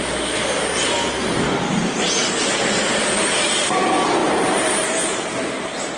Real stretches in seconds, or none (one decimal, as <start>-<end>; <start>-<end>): none